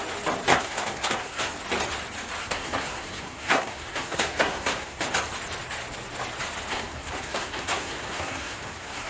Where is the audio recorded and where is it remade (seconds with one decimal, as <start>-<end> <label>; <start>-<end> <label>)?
0.0-0.5 recorded; 0.5-1.5 remade; 1.5-2.4 recorded; 2.4-5.0 remade; 5.0-6.7 recorded; 6.7-9.1 remade